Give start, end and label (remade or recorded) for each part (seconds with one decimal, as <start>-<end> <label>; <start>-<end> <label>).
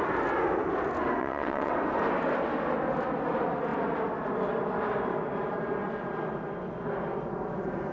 0.0-1.2 recorded; 1.2-1.7 remade; 1.7-7.9 recorded